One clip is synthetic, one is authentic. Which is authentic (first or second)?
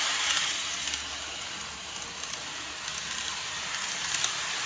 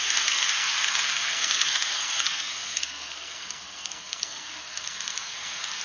first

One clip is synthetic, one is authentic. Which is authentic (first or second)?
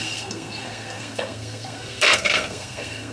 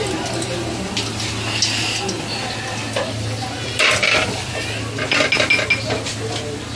second